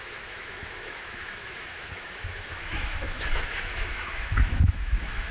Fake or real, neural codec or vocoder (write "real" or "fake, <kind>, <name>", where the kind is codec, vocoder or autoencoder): fake, autoencoder, DAC-VAE